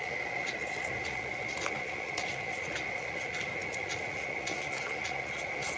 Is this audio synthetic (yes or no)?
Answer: yes